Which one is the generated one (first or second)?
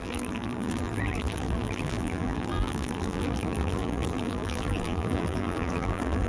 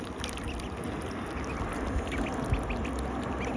first